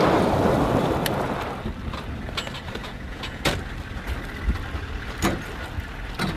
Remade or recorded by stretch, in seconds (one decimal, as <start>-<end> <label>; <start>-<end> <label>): 0.0-2.8 recorded; 2.8-3.4 remade; 3.4-6.4 recorded